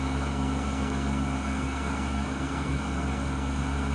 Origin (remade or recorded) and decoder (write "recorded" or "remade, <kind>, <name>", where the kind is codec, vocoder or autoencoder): remade, codec, SNAC